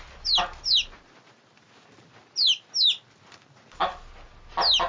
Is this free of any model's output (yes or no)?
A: yes